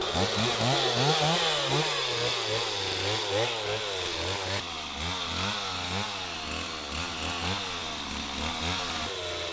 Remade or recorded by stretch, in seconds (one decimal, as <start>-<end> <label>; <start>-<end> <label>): 0.0-9.5 recorded